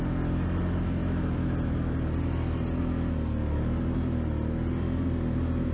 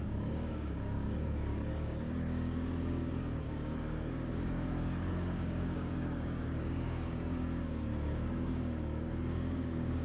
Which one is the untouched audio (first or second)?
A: first